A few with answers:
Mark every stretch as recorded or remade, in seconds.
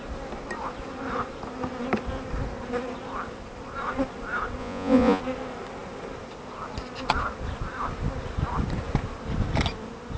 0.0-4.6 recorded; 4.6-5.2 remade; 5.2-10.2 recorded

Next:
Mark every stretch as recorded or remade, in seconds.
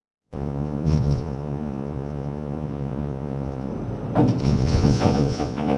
0.0-3.7 remade; 3.7-4.4 recorded; 4.4-5.8 remade